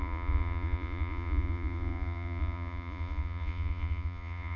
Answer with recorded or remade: remade